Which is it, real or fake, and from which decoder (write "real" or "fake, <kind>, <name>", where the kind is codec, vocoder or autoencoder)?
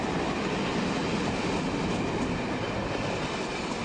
real